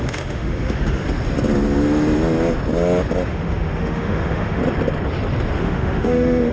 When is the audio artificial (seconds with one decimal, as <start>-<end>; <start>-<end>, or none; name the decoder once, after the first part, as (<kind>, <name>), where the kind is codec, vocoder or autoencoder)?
0.0-1.0 (autoencoder, DAC-VAE); 3.3-4.6; 5.6-6.5